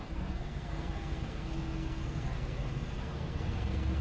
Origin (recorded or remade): remade